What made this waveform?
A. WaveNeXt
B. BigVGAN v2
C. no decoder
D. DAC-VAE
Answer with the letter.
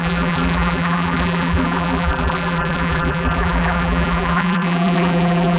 B